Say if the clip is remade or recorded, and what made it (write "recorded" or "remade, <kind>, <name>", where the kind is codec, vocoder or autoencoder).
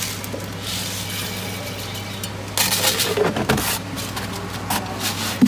recorded